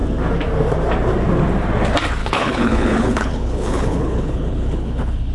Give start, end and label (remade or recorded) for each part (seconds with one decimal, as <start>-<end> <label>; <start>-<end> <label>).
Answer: 0.0-2.2 recorded; 2.2-5.3 remade